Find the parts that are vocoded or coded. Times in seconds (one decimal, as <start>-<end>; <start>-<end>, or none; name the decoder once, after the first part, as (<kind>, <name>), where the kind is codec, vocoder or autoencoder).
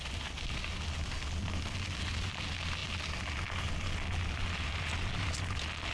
none